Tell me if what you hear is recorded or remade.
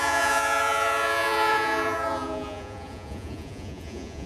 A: remade